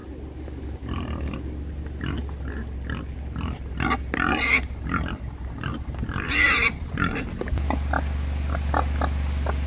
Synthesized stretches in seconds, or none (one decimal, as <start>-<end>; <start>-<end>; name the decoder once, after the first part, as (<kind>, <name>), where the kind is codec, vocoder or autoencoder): none